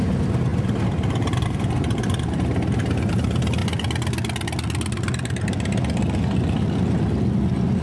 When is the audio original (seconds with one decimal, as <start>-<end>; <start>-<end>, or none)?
0.0-7.8